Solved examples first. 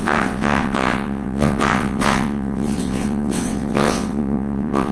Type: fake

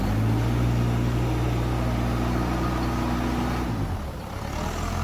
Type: real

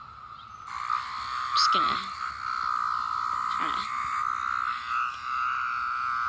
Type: real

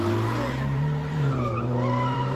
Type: fake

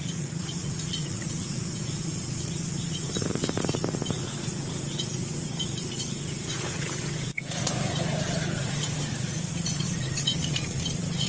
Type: fake